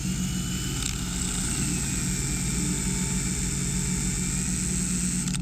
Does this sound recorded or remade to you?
recorded